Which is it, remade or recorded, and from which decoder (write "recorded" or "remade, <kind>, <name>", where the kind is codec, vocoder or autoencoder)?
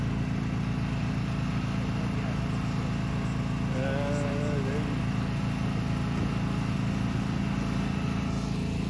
recorded